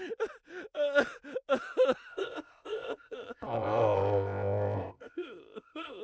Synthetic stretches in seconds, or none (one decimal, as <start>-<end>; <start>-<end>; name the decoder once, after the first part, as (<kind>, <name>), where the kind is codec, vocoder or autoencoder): 2.1-6.0 (codec, ZipCodec)